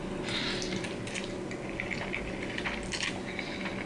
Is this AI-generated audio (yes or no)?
no